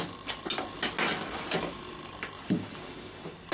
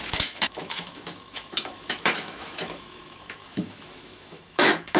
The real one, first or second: first